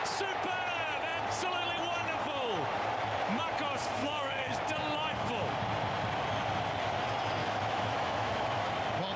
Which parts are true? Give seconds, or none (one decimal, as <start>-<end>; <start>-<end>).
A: 0.0-4.0; 4.7-7.4; 8.7-9.2